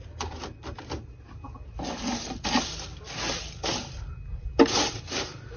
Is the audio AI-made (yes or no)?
no